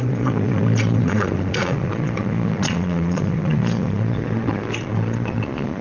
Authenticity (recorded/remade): remade